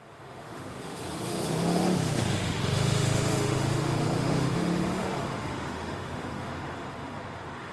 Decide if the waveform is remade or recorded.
remade